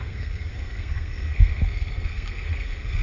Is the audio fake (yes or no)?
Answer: yes